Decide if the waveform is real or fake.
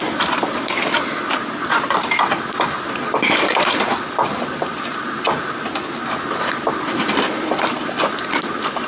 fake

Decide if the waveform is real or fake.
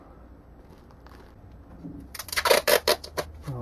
real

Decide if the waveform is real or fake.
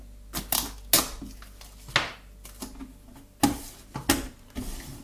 real